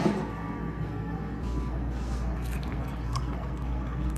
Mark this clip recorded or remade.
remade